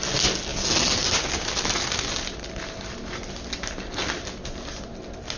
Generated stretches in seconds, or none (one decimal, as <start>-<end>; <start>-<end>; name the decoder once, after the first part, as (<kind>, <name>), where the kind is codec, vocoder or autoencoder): none